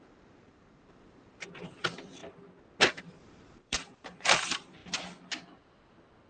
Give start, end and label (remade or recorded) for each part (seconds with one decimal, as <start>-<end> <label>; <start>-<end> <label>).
0.0-2.2 remade; 2.2-3.0 recorded; 3.0-4.8 remade; 4.8-6.3 recorded